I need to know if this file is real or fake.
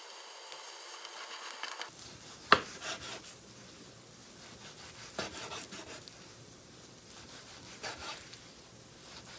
real